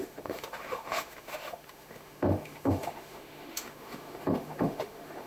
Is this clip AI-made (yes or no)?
yes